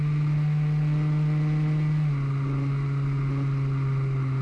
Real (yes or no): yes